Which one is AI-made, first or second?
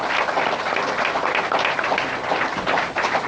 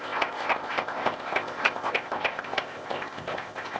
second